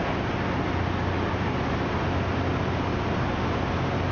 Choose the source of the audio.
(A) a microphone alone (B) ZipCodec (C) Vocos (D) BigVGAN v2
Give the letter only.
A